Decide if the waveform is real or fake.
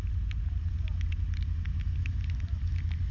real